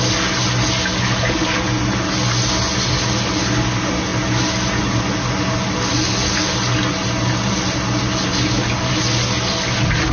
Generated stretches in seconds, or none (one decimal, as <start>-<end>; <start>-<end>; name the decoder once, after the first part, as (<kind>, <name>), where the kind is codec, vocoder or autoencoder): none